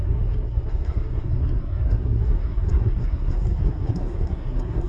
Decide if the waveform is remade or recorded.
remade